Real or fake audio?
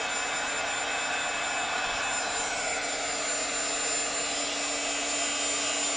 real